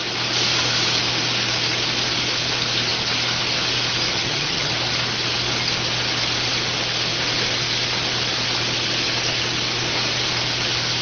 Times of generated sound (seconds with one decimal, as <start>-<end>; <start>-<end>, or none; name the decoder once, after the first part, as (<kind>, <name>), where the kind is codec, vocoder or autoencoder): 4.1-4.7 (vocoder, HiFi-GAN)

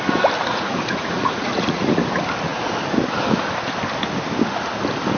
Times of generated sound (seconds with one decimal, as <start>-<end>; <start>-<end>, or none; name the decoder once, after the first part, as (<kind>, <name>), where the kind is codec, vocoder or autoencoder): 0.5-2.0 (vocoder, Vocos)

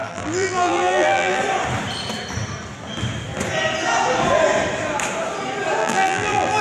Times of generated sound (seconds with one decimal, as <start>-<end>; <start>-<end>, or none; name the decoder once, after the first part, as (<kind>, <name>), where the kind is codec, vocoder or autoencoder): 0.0-1.4 (vocoder, BigVGAN v2); 5.8-6.6

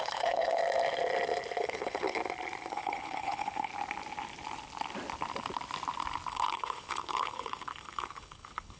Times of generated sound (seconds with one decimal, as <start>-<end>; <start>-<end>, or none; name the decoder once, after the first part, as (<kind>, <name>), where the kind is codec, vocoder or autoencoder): 0.0-0.6 (codec, HILCodec); 1.6-2.2; 2.7-3.7; 6.3-8.8

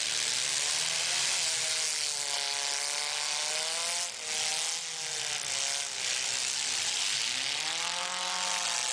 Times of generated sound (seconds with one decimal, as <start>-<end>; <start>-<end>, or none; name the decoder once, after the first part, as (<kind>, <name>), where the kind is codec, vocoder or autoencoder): none

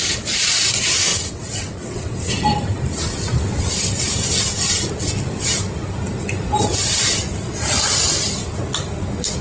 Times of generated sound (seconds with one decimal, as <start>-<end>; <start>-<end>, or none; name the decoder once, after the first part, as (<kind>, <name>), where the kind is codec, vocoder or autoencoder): 1.1-2.3 (vocoder, WaveNeXt)

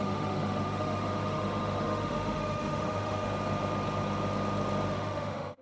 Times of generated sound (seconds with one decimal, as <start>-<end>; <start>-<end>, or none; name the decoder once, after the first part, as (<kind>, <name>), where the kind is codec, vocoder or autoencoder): 0.0-3.3 (autoencoder, DAC-VAE); 4.9-5.6